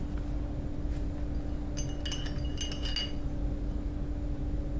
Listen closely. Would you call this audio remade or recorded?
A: recorded